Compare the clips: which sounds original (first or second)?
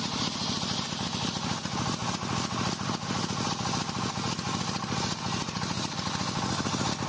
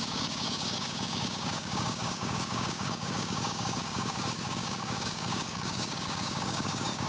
first